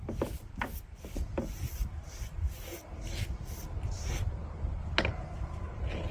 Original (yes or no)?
yes